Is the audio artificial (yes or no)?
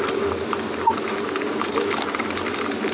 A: no